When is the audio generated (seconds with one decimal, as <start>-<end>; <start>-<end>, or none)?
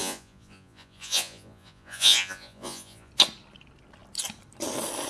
0.0-3.1